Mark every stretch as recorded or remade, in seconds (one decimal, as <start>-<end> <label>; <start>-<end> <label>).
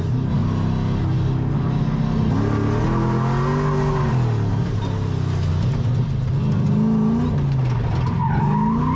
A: 0.0-8.9 recorded